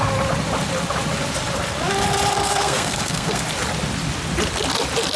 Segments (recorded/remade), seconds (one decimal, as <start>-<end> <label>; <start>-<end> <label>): 0.0-2.4 recorded; 2.4-3.4 remade; 3.4-5.2 recorded